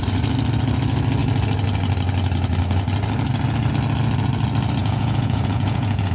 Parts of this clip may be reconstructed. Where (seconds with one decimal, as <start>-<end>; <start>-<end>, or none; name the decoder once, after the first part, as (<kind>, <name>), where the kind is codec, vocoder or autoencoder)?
4.8-6.1 (vocoder, Vocos)